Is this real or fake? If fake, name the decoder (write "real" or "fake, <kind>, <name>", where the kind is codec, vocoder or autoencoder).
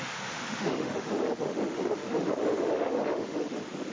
fake, autoencoder, DAC-VAE